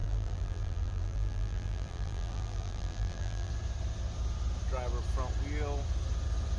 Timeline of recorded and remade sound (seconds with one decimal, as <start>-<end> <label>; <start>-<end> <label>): 0.0-3.5 remade; 3.5-6.6 recorded

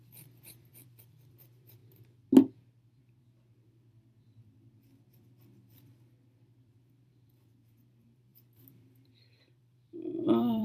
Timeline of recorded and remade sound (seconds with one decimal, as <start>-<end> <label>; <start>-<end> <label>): 0.0-1.8 remade; 1.8-3.0 recorded; 3.0-10.6 remade

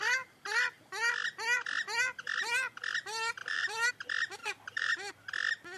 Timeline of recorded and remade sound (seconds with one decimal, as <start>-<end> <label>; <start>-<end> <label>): 0.0-3.4 recorded; 3.4-3.9 remade; 3.9-4.4 recorded; 4.4-5.1 remade; 5.1-5.8 recorded

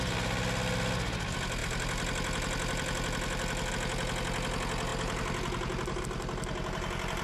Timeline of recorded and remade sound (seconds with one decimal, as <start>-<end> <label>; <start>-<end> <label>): 0.0-1.6 recorded; 1.6-3.7 remade; 3.7-4.9 recorded; 4.9-6.0 remade; 6.0-7.2 recorded

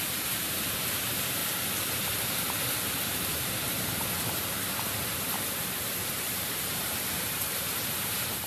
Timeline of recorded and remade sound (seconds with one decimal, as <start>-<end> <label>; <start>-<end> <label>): 0.0-1.4 remade; 1.4-5.5 recorded; 5.5-8.5 remade

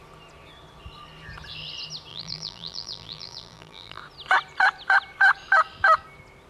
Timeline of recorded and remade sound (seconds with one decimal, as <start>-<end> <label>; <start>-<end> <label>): 0.0-2.1 recorded; 2.1-4.0 remade; 4.0-6.5 recorded